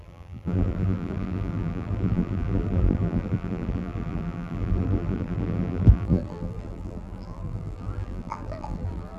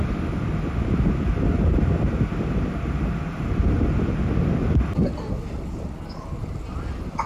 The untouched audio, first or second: second